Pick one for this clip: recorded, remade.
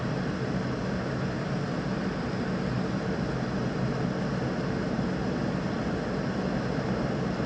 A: recorded